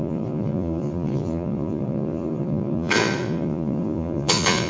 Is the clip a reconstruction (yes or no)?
yes